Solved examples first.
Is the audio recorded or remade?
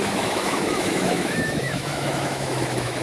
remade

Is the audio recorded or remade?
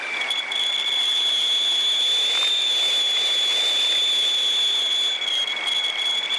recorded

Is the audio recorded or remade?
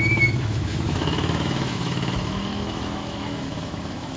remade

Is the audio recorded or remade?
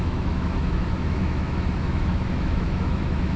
remade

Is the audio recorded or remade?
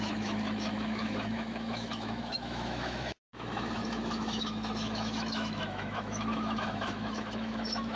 remade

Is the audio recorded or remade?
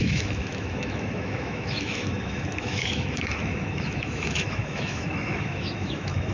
remade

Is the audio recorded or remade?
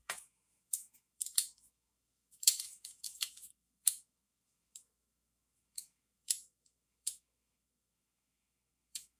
remade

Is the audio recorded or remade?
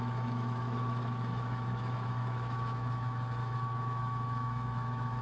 remade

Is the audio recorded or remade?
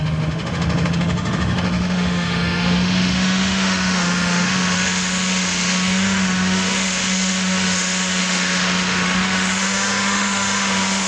remade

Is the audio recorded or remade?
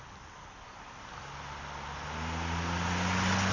recorded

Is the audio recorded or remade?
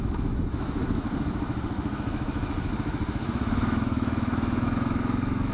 remade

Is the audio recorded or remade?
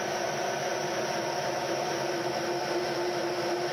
recorded